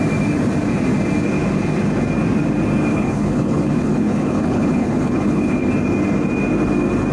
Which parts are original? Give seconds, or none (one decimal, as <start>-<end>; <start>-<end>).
0.0-2.9; 5.7-7.1